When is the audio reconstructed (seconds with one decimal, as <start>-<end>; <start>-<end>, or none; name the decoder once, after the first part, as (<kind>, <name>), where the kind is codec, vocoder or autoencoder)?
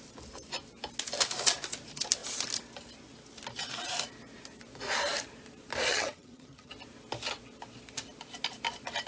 5.9-6.7 (vocoder, HiFi-GAN)